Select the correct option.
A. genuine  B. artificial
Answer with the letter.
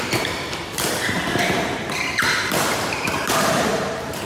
B